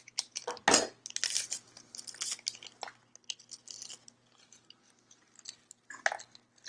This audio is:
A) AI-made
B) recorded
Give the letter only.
B